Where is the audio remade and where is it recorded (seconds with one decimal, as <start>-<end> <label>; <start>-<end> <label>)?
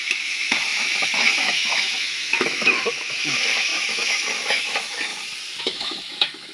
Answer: 0.0-5.1 remade; 5.1-5.6 recorded; 5.6-6.5 remade